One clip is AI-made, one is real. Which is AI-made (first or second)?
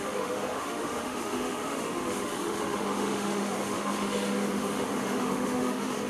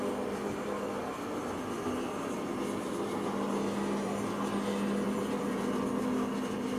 first